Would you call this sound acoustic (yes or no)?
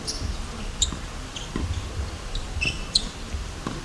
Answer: yes